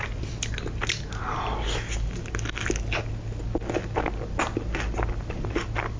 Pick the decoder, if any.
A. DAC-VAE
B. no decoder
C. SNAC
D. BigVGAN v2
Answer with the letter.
B